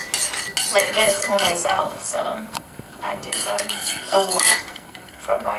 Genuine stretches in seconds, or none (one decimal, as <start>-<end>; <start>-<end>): 0.0-0.8